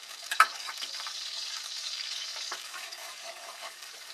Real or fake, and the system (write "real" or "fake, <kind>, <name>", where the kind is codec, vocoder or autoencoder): fake, codec, DAC